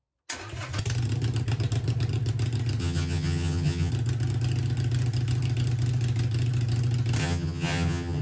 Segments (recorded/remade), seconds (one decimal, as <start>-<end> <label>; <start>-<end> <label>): 0.0-2.8 recorded; 2.8-3.9 remade; 3.9-7.2 recorded; 7.2-8.2 remade